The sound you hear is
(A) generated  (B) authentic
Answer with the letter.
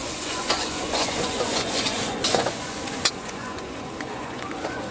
A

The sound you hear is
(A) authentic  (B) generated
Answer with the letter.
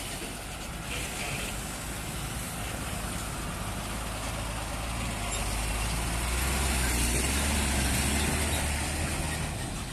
A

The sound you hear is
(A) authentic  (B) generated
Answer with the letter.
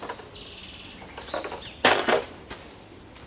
A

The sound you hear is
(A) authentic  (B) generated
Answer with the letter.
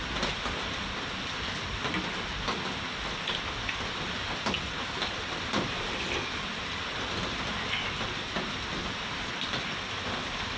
A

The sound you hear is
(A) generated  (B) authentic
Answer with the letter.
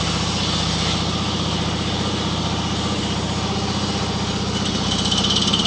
B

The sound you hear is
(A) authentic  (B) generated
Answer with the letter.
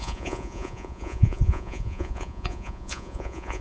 B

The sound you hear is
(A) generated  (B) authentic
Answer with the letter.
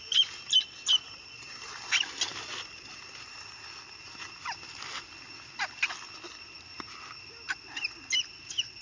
B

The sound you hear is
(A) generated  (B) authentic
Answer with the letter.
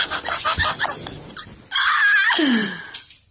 B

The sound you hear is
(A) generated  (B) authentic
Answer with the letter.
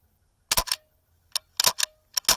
B